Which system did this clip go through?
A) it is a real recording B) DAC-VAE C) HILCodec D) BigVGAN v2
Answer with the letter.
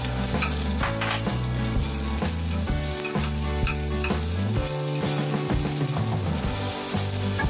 A